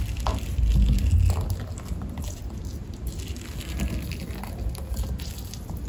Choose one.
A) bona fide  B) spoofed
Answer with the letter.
A